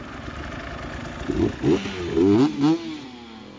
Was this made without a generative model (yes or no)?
yes